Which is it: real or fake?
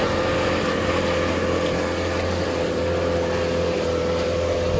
real